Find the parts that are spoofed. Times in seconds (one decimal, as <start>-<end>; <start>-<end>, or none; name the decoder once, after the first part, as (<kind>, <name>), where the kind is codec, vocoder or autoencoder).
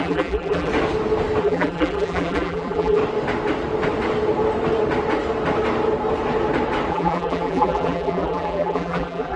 0.0-0.7 (vocoder, BigVGAN v2); 1.4-3.0; 6.9-9.4